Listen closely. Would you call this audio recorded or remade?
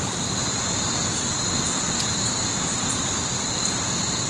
remade